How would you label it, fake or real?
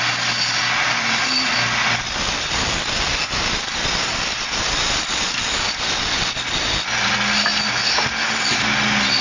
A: real